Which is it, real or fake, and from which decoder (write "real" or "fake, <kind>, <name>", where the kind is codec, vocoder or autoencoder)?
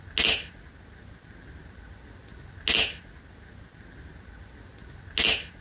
real